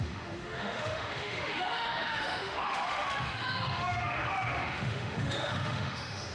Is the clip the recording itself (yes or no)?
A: no